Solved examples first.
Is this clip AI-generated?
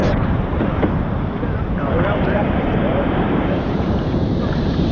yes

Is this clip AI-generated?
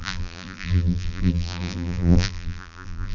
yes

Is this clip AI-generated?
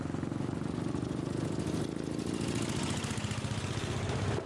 no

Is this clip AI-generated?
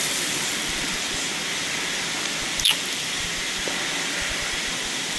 yes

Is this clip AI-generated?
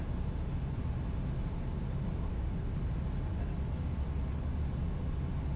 no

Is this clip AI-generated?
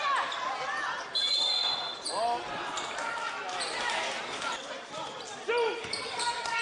yes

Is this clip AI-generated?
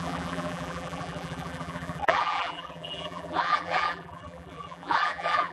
yes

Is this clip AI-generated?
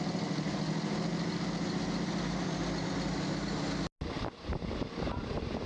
no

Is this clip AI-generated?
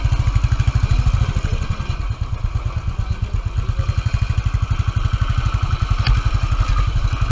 no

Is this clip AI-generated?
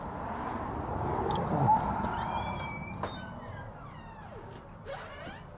yes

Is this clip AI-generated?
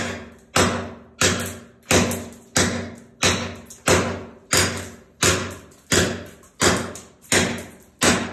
no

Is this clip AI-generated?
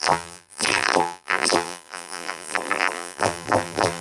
yes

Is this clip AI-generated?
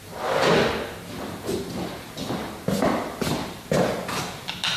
no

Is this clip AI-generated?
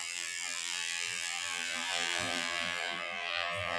yes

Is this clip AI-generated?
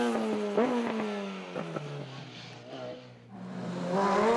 no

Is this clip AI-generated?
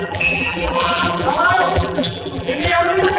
yes